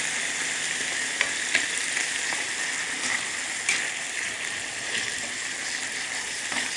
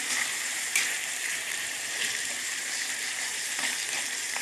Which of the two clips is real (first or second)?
first